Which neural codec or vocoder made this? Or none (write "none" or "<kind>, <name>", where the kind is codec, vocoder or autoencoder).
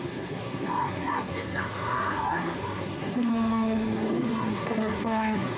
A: codec, SNAC